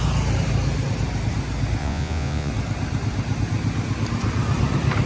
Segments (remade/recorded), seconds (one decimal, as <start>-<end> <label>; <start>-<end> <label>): 0.0-1.8 recorded; 1.8-2.5 remade; 2.5-5.1 recorded